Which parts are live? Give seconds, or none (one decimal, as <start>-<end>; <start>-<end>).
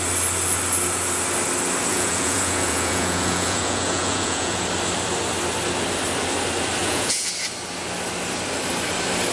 0.0-1.9; 4.6-6.8; 7.3-9.3